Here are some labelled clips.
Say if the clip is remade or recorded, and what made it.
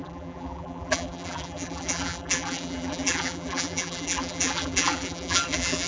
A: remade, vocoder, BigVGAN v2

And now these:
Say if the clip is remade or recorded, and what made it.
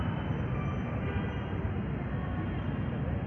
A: recorded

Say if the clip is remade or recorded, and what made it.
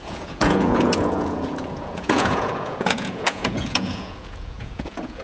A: remade, vocoder, Vocos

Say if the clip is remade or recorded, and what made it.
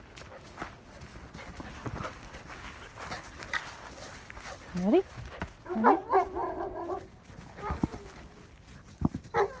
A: recorded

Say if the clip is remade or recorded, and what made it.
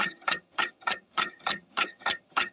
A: remade, vocoder, HiFi-GAN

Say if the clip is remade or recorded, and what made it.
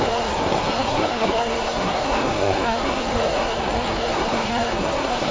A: remade, codec, SNAC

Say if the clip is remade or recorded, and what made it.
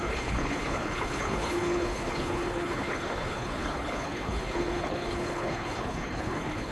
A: remade, codec, HILCodec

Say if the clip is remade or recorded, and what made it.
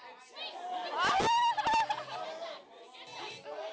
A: recorded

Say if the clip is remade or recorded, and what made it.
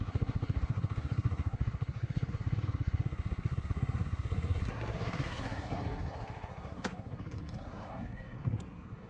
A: remade, codec, SNAC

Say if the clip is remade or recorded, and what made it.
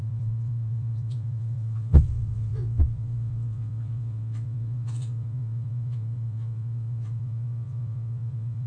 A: remade, vocoder, WaveNeXt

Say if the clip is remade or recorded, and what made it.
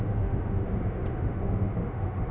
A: remade, autoencoder, DAC-VAE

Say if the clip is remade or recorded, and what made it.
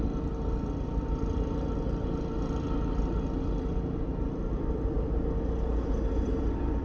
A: recorded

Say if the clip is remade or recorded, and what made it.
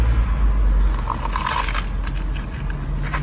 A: recorded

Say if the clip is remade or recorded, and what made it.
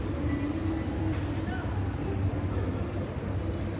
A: recorded